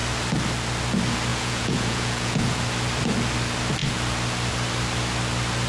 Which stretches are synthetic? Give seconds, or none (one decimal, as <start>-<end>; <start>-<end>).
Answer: 1.3-2.6